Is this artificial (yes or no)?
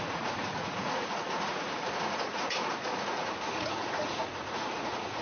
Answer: yes